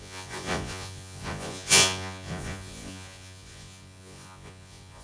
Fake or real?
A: fake